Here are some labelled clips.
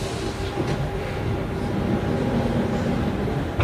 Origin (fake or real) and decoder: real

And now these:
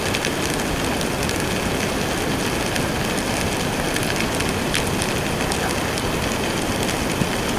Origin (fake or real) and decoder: real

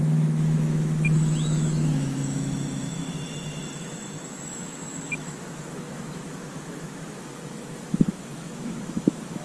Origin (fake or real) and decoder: fake, autoencoder, DAC-VAE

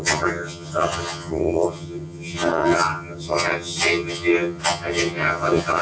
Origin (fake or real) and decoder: fake, vocoder, HiFi-GAN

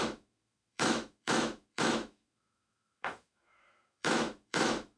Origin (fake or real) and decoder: fake, autoencoder, DAC-VAE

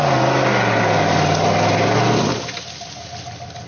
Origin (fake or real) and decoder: real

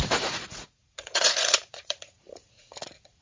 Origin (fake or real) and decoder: fake, vocoder, Vocos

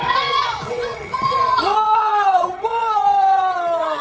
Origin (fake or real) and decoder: fake, vocoder, WaveNeXt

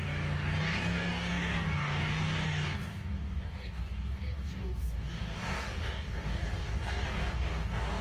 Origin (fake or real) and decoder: fake, codec, DAC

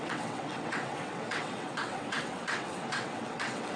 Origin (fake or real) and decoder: fake, vocoder, WaveNeXt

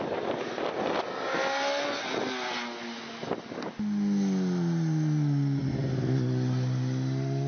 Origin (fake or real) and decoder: real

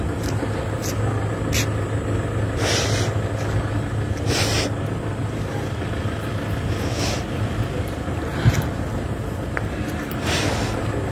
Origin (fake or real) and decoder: real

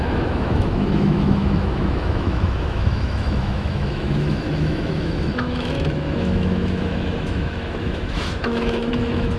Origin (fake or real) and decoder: fake, autoencoder, DAC-VAE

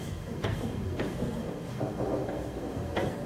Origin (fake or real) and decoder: fake, codec, SNAC